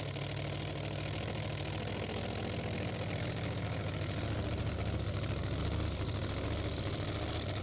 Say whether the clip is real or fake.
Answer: real